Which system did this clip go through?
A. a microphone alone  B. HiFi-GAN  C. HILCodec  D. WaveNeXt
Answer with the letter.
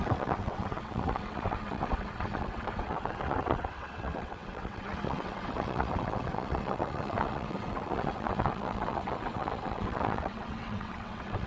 D